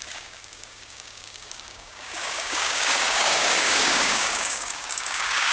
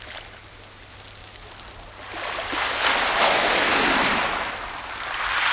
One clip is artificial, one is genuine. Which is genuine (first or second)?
second